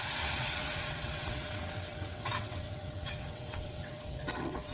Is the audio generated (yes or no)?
yes